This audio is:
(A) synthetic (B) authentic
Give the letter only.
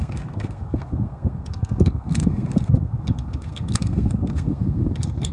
A